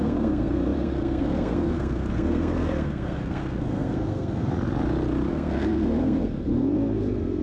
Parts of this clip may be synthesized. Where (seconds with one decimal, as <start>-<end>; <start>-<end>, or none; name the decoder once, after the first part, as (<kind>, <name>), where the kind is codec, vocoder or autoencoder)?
0.0-4.5 (codec, SNAC); 5.3-7.4